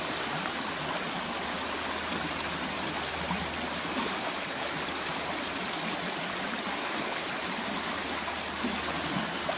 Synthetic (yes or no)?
no